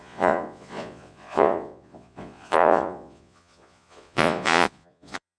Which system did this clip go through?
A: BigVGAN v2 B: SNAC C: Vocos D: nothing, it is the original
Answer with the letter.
C